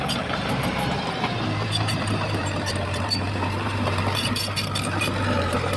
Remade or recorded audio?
remade